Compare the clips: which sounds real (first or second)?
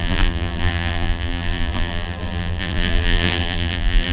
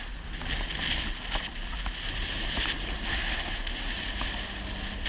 second